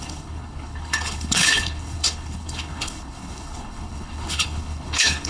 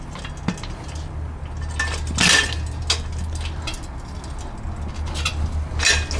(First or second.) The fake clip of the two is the first